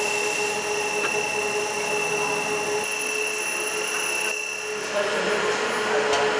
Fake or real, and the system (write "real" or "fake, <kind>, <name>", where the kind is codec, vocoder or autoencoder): real